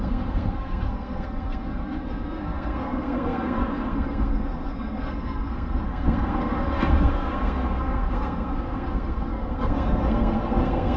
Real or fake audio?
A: fake